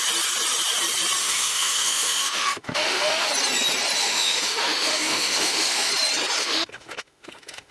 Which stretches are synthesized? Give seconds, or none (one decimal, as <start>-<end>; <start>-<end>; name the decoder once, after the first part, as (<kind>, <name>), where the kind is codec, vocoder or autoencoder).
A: 1.2-3.3 (autoencoder, DAC-VAE); 4.0-5.9; 6.4-7.7